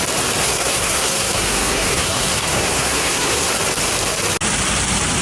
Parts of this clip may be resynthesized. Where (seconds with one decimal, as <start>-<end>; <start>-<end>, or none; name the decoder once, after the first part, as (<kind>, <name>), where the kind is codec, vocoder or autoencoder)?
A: 0.4-3.5 (codec, SNAC)